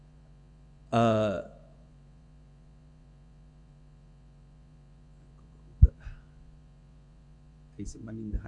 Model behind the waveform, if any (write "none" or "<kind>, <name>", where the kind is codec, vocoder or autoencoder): vocoder, Vocos